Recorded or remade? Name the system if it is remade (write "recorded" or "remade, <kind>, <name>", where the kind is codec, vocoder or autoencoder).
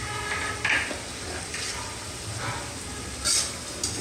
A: recorded